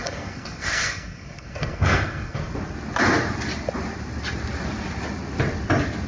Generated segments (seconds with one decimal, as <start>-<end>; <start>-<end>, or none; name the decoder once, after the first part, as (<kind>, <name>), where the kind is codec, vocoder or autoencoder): 0.0-2.5 (codec, SNAC)